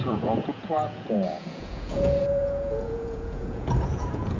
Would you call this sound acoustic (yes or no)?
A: no